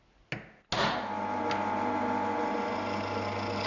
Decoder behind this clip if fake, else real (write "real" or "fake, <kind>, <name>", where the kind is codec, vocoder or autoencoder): real